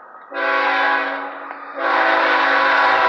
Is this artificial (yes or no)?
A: no